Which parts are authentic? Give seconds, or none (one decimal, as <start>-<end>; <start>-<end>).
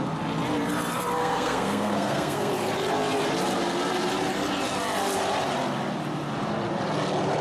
0.0-1.2; 2.5-7.4